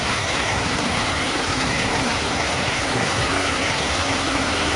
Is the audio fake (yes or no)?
yes